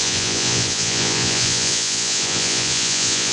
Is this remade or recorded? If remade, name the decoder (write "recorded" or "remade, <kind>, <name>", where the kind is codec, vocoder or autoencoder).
remade, vocoder, Vocos